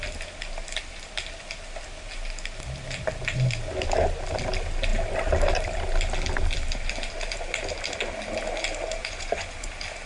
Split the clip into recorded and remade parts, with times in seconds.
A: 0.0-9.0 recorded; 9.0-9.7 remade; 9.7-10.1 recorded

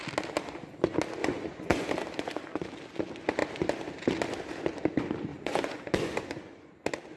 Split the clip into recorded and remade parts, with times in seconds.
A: 0.0-1.2 recorded; 1.2-1.9 remade; 1.9-5.3 recorded; 5.3-6.7 remade; 6.7-7.2 recorded

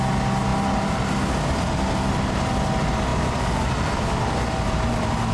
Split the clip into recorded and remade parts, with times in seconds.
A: 0.0-5.3 recorded

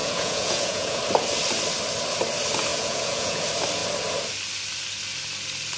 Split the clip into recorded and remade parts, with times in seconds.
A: 0.0-1.0 remade; 1.0-2.7 recorded; 2.7-3.4 remade; 3.4-5.8 recorded

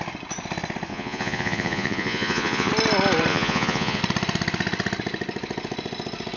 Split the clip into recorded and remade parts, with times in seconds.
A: 0.0-0.9 recorded; 0.9-2.7 remade; 2.7-3.3 recorded; 3.3-4.0 remade; 4.0-6.4 recorded

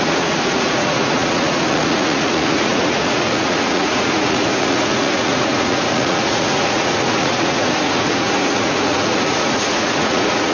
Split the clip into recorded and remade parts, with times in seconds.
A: 0.0-10.5 remade